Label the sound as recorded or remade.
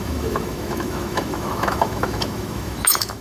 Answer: remade